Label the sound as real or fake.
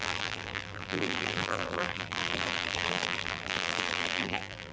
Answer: fake